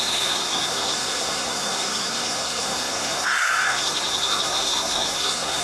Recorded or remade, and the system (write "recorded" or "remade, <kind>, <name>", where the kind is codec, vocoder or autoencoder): remade, codec, SNAC